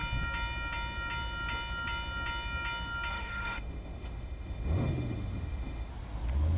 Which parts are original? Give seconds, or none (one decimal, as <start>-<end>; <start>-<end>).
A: 0.0-3.1; 5.9-6.6